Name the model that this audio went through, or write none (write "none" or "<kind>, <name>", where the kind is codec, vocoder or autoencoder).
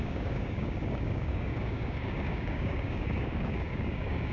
codec, DAC